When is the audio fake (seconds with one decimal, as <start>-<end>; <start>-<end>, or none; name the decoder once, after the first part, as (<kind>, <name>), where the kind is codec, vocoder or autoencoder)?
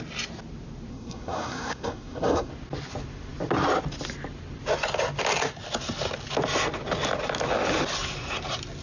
0.9-2.5 (codec, SNAC)